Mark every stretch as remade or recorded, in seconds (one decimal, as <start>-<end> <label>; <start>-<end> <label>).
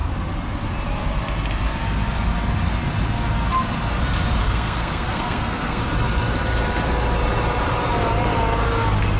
0.0-4.4 recorded; 4.4-5.8 remade; 5.8-9.2 recorded